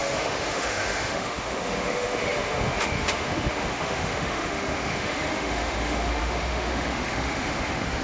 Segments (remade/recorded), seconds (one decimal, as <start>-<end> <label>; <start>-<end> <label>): 0.0-8.0 remade